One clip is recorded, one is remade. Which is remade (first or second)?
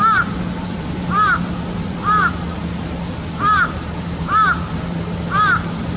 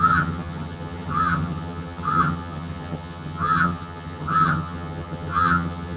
second